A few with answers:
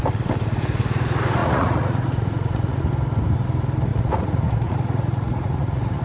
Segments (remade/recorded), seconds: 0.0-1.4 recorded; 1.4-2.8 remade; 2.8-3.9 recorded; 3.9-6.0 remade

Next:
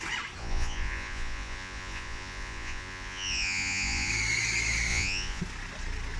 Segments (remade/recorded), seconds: 0.0-0.4 recorded; 0.4-4.1 remade; 4.1-4.9 recorded; 4.9-5.4 remade; 5.4-6.2 recorded